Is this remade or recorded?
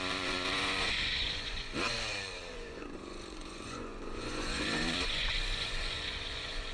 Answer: remade